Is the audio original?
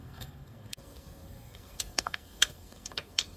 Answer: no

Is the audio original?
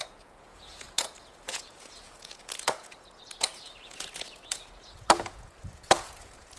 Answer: no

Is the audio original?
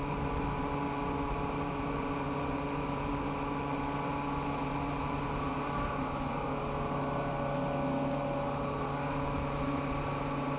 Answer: yes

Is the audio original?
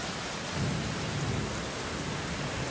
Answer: yes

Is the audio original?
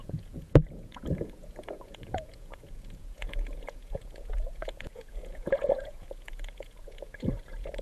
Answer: no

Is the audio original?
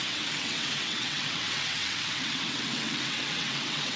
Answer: no